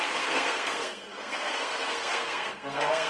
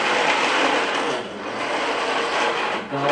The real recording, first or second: second